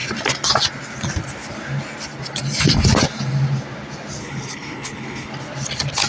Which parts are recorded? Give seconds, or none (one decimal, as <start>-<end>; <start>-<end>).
0.0-4.2; 5.3-6.1